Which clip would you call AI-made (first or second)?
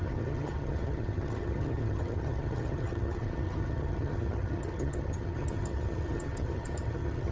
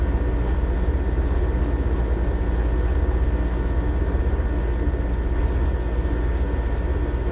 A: first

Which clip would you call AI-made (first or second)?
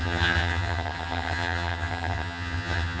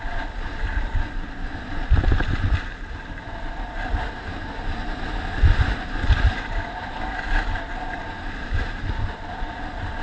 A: first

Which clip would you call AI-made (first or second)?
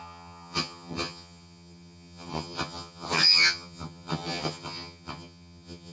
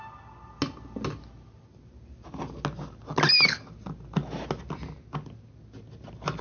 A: first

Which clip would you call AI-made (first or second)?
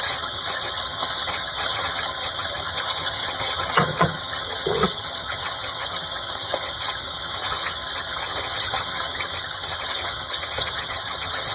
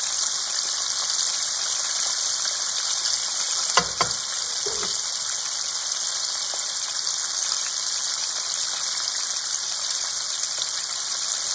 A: first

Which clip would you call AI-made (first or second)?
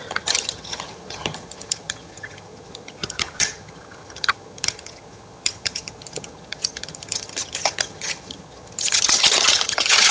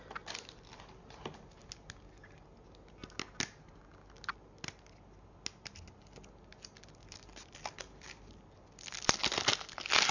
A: first